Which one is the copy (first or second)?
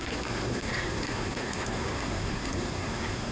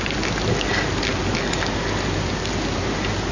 first